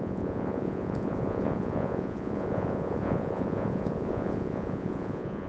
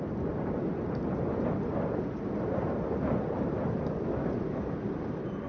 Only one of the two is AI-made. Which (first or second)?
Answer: first